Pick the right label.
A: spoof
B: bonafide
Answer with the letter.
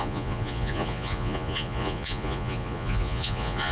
A